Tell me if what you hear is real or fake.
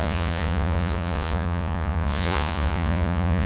fake